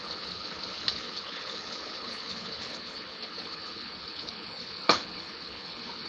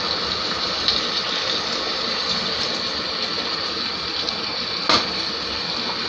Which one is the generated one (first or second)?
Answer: first